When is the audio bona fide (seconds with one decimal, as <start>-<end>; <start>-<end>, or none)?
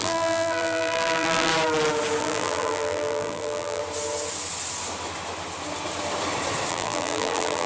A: 1.5-2.2; 3.8-6.7